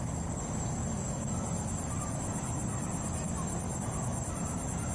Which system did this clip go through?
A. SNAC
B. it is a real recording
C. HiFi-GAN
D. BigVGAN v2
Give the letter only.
B